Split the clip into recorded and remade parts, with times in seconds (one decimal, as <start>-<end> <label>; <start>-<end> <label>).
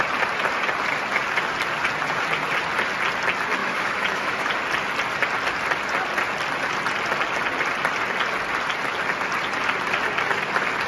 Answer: 0.0-3.6 recorded; 3.6-4.5 remade; 4.5-10.9 recorded